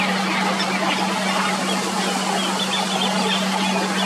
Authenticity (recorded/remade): recorded